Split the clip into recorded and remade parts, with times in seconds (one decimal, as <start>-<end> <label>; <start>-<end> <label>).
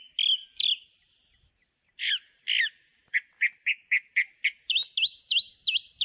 0.0-6.0 recorded